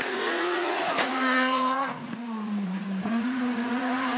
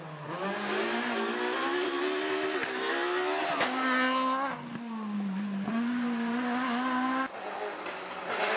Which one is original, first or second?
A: second